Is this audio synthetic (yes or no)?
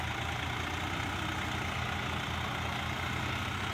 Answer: no